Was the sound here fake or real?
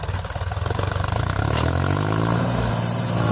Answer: real